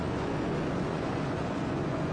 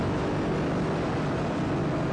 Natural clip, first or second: second